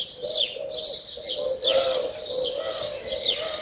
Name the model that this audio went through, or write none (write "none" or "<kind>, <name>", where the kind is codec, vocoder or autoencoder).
none